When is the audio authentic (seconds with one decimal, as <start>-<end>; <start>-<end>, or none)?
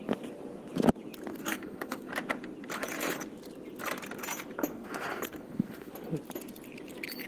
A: 0.0-1.3; 2.1-4.7; 5.9-7.3